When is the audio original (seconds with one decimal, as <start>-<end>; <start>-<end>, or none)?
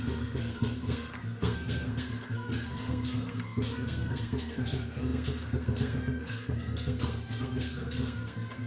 none